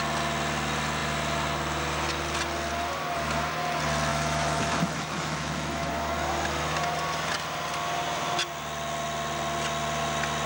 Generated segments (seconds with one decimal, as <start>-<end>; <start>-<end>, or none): 4.1-5.9